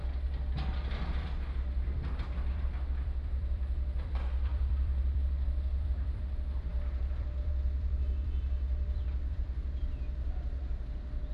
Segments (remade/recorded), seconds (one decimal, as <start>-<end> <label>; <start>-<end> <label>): 0.0-1.1 recorded; 1.1-9.8 remade; 9.8-11.3 recorded